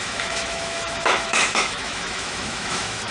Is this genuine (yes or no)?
no